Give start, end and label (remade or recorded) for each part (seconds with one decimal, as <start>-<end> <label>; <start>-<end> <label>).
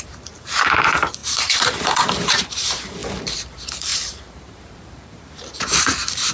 0.0-6.3 remade